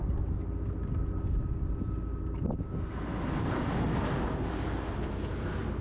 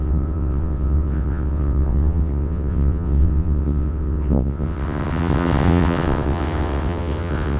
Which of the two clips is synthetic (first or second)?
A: second